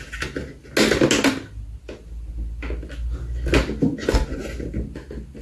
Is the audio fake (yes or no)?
no